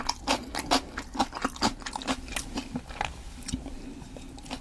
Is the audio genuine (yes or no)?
yes